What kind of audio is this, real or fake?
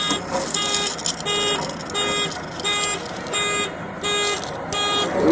real